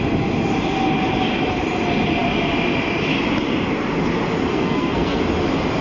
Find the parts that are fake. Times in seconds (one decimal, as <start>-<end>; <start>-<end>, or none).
4.5-5.2